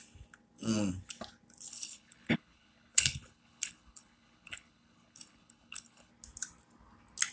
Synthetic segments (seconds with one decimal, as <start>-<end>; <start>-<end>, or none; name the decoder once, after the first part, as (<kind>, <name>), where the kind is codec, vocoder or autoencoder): 1.7-6.1 (codec, HILCodec)